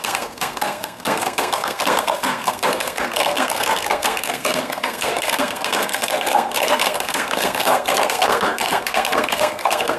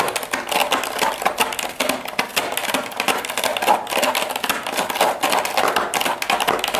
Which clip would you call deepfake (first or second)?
first